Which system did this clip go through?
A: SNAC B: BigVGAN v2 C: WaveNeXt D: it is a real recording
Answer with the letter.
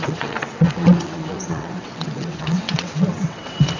C